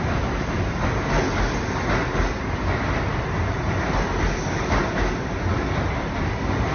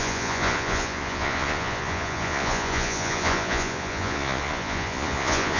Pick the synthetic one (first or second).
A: second